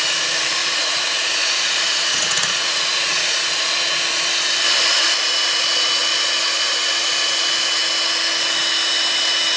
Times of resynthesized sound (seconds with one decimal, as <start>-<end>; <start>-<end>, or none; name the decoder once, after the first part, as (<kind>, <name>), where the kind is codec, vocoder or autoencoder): 0.6-3.7 (vocoder, Vocos)